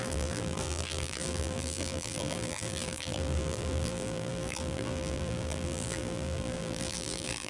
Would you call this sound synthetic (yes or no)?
yes